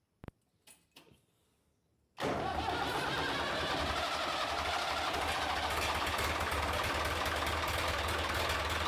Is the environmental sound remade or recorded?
recorded